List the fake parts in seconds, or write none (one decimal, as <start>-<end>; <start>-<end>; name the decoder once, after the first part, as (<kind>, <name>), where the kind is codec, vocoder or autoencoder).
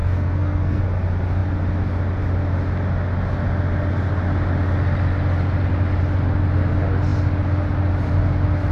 0.0-0.8 (codec, SNAC)